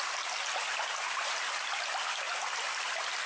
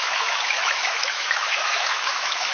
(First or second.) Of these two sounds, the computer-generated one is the second